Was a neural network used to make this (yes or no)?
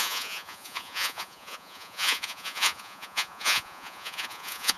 yes